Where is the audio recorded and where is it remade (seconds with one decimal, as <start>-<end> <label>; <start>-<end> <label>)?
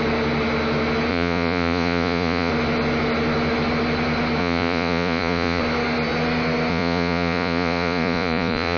0.0-1.1 recorded; 1.1-2.5 remade; 2.5-4.4 recorded; 4.4-5.6 remade; 5.6-6.7 recorded; 6.7-8.8 remade